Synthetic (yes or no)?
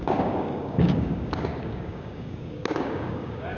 yes